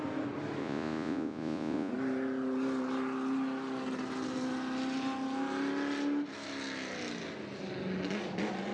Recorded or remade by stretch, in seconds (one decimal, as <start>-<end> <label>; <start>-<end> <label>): 0.0-0.6 recorded; 0.6-1.9 remade; 1.9-8.7 recorded